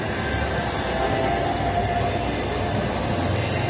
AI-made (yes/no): no